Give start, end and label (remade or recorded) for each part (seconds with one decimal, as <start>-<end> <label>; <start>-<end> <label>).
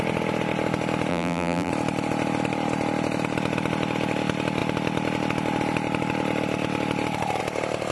0.0-1.1 recorded; 1.1-1.7 remade; 1.7-7.9 recorded